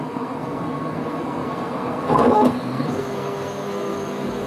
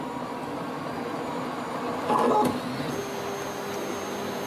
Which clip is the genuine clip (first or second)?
second